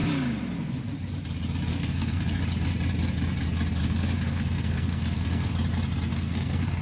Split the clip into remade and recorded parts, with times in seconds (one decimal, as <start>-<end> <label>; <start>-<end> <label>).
0.0-1.7 recorded; 1.7-2.4 remade; 2.4-3.8 recorded; 3.8-5.5 remade; 5.5-6.1 recorded; 6.1-6.8 remade